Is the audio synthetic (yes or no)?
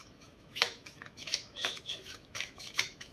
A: yes